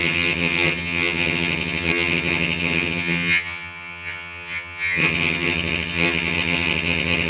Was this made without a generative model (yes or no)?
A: no